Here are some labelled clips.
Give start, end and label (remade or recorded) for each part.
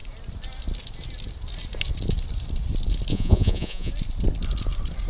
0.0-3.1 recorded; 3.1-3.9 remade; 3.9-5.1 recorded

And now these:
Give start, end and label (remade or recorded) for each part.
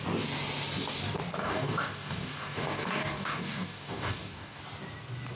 0.0-1.4 recorded; 1.4-4.6 remade; 4.6-5.4 recorded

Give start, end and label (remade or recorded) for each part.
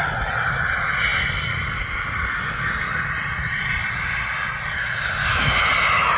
0.0-5.2 recorded; 5.2-5.7 remade; 5.7-6.2 recorded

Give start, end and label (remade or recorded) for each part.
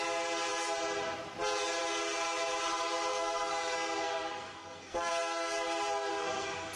0.0-3.1 recorded; 3.1-5.1 remade; 5.1-6.1 recorded; 6.1-6.8 remade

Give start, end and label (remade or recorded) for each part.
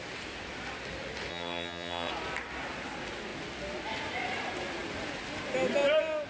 0.0-1.3 recorded; 1.3-2.1 remade; 2.1-6.3 recorded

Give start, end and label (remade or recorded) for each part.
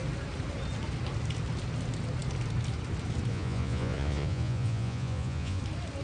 0.0-3.3 recorded; 3.3-5.6 remade; 5.6-6.0 recorded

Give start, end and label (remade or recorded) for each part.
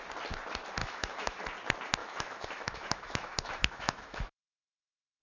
0.0-0.8 recorded; 0.8-1.4 remade; 1.4-2.0 recorded; 2.0-5.2 remade